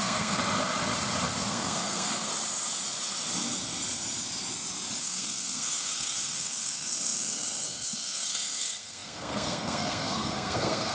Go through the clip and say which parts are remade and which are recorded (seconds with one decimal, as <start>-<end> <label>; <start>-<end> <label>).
0.0-0.4 remade; 0.4-1.5 recorded; 1.5-2.3 remade; 2.3-5.0 recorded; 5.0-10.9 remade